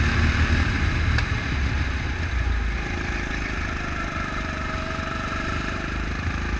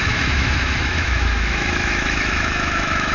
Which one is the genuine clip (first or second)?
first